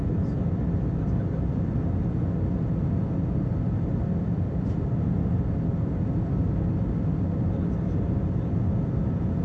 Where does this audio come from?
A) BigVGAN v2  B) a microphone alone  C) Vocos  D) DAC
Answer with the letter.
B